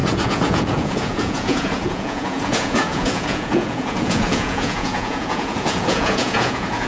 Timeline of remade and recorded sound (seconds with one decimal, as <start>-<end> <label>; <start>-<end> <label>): 0.0-6.9 remade